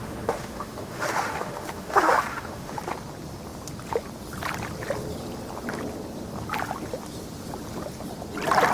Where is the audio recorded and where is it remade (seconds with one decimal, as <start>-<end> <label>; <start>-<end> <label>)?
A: 0.0-2.8 remade; 2.8-8.7 recorded